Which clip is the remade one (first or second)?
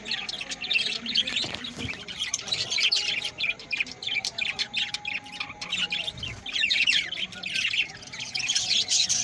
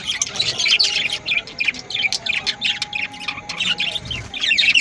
first